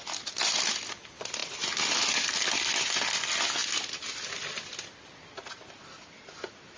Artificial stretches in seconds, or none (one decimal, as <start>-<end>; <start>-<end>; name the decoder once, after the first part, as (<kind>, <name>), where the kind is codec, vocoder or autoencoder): none